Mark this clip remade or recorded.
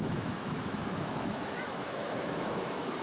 remade